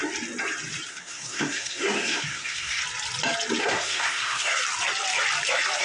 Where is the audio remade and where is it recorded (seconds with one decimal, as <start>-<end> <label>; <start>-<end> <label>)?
0.0-0.9 recorded; 0.9-2.8 remade; 2.8-3.6 recorded; 3.6-4.6 remade; 4.6-5.8 recorded